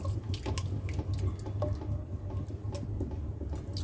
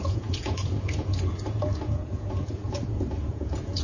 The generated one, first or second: second